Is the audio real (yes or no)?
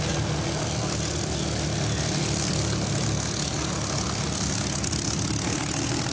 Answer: yes